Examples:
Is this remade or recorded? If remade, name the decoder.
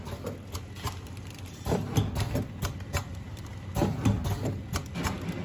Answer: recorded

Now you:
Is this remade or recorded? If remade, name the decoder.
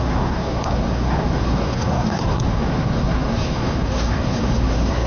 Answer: remade, codec, SNAC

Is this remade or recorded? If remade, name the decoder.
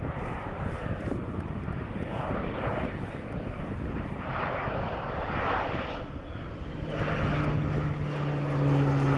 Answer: recorded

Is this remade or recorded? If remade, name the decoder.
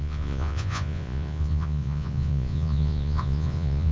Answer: remade, vocoder, Vocos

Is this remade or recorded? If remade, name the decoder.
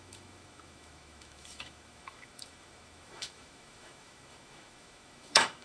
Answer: remade, autoencoder, DAC-VAE